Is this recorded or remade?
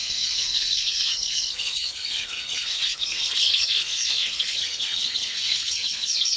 remade